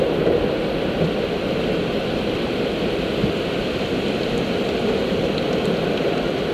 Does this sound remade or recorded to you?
recorded